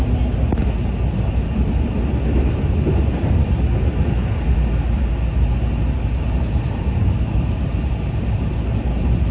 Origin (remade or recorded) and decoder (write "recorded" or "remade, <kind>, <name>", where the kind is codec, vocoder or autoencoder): recorded